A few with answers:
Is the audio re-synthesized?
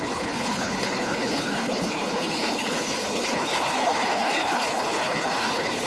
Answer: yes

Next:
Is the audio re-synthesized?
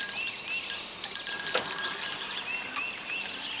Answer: no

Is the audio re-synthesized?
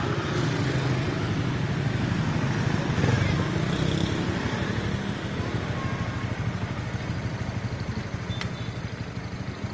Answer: no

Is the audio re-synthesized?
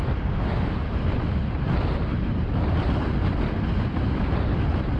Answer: no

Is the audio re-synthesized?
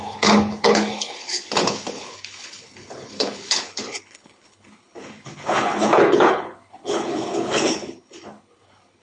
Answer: yes